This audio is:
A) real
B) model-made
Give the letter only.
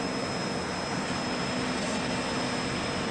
A